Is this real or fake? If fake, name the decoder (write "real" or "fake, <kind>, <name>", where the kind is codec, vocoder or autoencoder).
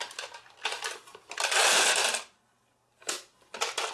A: real